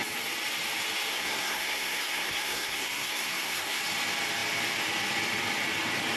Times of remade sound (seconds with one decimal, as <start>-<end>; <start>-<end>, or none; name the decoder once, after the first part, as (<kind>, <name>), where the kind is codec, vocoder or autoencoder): 1.1-3.8 (codec, SNAC)